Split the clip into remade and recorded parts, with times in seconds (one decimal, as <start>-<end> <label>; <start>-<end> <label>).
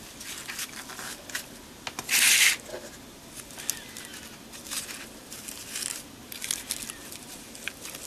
0.0-8.1 recorded